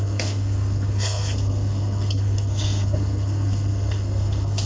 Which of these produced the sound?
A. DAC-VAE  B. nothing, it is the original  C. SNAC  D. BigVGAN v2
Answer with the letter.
C